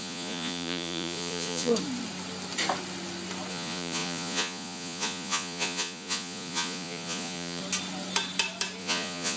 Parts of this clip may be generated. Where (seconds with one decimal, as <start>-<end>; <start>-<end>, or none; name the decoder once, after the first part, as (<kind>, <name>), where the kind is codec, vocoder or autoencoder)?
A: 0.0-1.7 (vocoder, Vocos); 3.5-7.6; 8.8-9.4